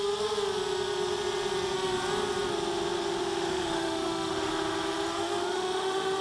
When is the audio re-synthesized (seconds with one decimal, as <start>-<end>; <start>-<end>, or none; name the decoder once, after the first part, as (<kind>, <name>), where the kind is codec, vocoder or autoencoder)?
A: 3.2-4.5 (autoencoder, DAC-VAE); 5.1-6.2